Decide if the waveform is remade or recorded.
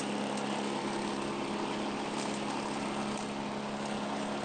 recorded